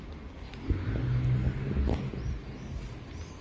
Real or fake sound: real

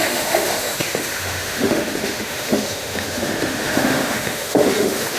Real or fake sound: fake